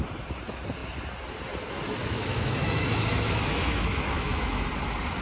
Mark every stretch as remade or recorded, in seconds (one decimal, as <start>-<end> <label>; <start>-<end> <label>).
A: 0.0-2.0 recorded; 2.0-4.7 remade; 4.7-5.2 recorded

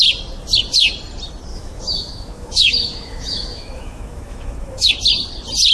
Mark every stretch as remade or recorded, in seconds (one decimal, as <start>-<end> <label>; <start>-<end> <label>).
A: 0.0-1.5 recorded; 1.5-4.9 remade; 4.9-5.7 recorded

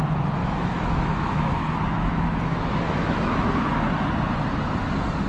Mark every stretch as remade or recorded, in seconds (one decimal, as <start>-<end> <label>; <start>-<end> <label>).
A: 0.0-0.4 recorded; 0.4-3.6 remade; 3.6-5.3 recorded